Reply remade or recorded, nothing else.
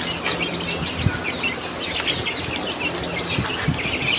recorded